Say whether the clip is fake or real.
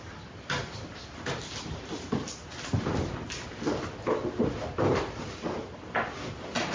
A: real